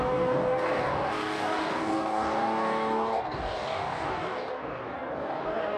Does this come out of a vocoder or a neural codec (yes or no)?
yes